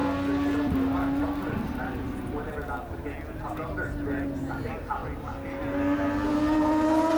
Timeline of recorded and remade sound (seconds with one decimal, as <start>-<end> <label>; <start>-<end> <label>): 0.0-7.2 recorded